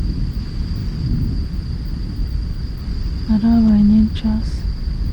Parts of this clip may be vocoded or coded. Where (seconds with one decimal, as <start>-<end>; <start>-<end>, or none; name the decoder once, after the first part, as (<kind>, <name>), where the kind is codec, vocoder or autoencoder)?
none